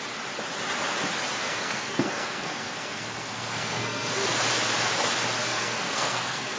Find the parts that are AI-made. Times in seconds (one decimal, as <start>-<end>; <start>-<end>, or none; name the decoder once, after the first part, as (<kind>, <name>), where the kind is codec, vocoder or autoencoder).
1.4-4.4 (codec, SNAC); 5.5-6.6